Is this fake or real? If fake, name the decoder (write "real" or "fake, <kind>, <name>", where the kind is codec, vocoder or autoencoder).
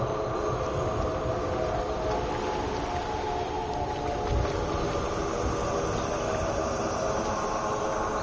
real